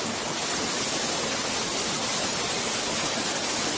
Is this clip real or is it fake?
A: real